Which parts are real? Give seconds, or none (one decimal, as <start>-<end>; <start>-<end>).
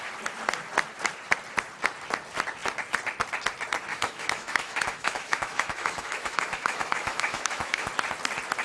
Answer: 0.0-3.9; 7.9-8.6